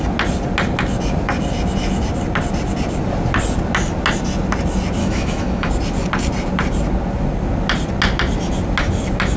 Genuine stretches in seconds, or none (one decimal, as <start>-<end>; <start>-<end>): 0.0-5.0; 5.7-9.4